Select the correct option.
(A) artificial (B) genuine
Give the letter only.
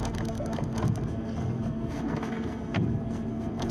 A